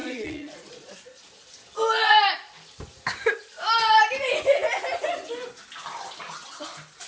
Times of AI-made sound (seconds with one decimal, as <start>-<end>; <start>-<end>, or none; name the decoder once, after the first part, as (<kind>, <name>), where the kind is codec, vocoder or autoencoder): 0.0-1.3 (vocoder, Vocos)